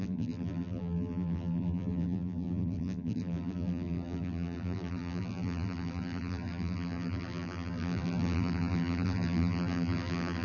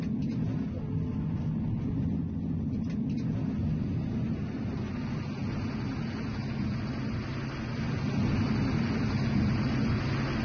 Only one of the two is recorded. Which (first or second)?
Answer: second